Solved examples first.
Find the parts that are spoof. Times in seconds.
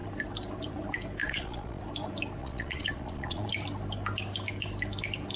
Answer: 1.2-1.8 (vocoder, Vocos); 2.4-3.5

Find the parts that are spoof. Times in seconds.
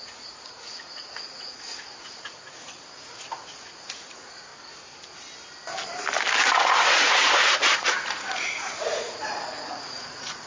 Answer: 0.0-4.5 (vocoder, Vocos); 6.6-10.5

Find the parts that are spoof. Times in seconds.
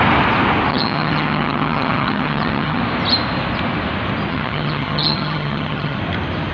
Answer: 0.7-2.8 (vocoder, HiFi-GAN); 4.3-6.0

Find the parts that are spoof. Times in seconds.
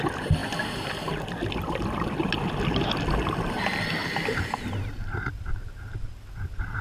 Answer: none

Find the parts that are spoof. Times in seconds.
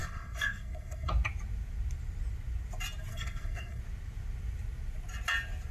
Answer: 0.0-1.1 (codec, SNAC); 3.1-3.8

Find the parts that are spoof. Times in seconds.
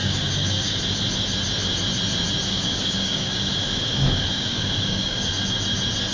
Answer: 0.0-0.8 (codec, DAC); 2.5-3.5; 4.2-5.3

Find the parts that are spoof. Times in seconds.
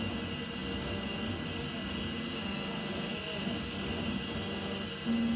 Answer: none